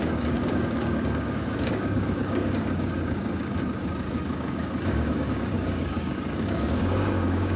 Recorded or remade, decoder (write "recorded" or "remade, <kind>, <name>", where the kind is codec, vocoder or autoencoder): remade, codec, DAC